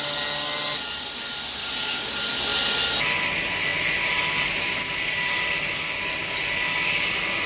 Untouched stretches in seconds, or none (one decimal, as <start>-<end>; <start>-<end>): 0.0-1.6; 2.1-7.5